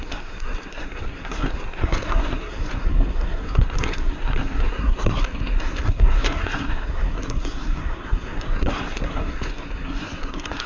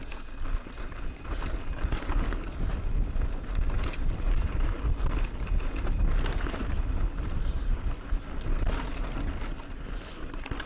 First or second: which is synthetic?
first